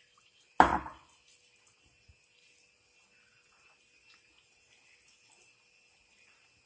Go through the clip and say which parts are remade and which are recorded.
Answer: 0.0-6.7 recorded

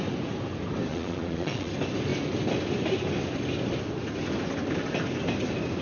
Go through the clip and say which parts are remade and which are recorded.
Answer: 0.0-0.9 recorded; 0.9-1.7 remade; 1.7-5.8 recorded

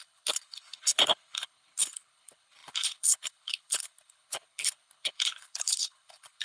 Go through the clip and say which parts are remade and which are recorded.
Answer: 0.0-6.4 remade